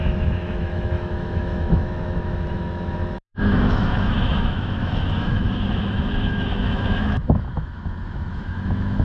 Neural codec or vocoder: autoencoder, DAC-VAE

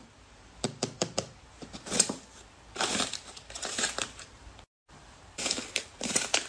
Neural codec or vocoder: vocoder, BigVGAN v2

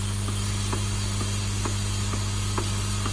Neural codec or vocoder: none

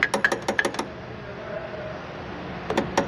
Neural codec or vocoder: none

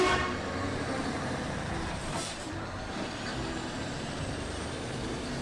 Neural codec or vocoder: vocoder, BigVGAN v2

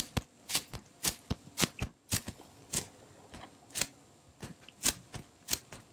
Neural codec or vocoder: none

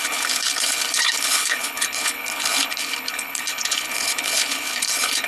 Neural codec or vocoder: codec, HILCodec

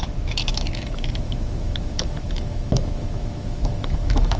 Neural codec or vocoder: autoencoder, DAC-VAE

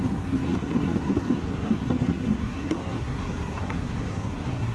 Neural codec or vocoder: codec, SNAC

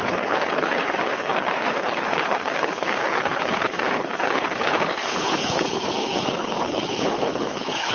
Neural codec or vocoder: codec, HILCodec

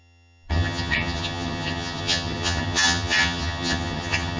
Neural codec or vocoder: vocoder, HiFi-GAN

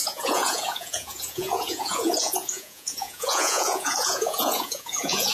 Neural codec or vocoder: vocoder, Vocos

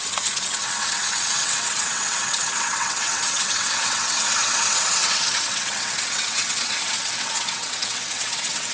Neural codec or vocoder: vocoder, WaveNeXt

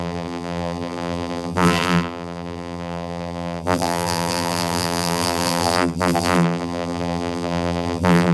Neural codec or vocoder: vocoder, BigVGAN v2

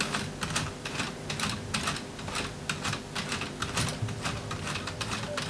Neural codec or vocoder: none